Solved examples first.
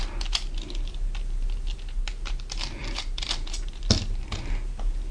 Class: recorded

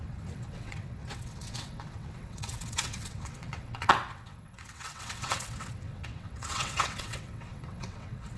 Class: remade